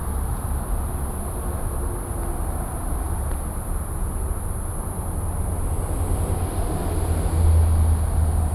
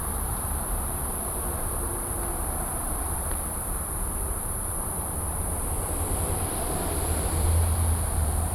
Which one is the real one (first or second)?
first